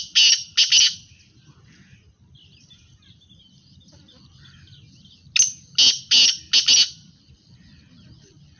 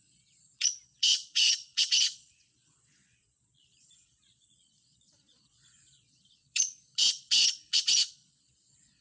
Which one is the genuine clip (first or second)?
first